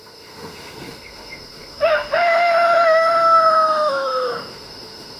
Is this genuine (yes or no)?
no